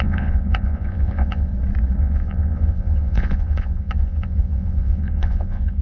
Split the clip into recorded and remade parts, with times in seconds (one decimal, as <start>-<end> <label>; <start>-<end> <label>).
0.0-1.5 remade; 1.5-2.0 recorded; 2.0-5.8 remade